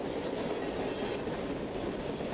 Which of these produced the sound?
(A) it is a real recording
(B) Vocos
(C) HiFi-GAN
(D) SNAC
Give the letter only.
A